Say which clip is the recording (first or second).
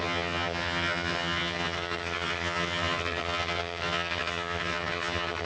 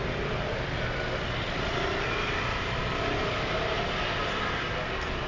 second